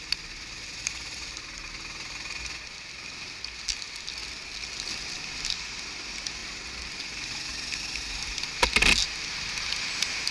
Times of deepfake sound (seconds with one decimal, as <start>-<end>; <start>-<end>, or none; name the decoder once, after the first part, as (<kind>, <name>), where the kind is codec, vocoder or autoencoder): none